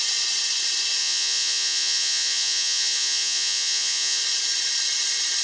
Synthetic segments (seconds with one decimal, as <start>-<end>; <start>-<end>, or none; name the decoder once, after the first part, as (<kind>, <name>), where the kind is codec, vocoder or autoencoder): 1.0-4.2 (vocoder, Vocos)